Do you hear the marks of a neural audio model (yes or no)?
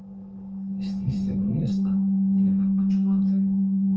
yes